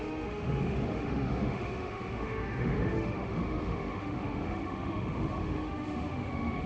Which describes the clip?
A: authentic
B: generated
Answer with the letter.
B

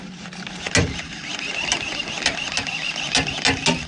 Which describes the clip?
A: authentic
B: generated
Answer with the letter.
A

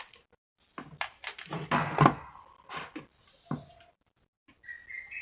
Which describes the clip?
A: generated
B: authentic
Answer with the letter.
B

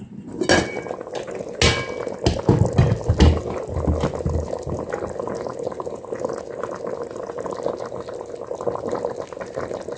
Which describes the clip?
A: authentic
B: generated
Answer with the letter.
A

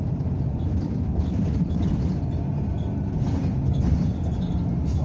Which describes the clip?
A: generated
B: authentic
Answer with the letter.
B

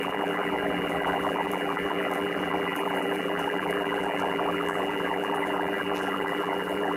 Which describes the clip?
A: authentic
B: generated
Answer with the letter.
B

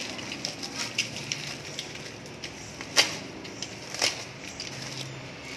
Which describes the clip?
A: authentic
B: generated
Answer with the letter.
A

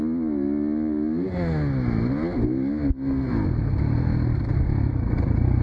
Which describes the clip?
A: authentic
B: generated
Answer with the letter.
A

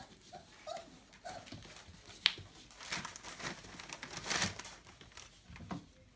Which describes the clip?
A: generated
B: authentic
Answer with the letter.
B